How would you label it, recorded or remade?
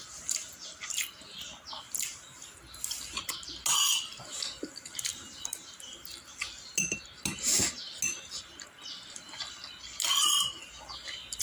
recorded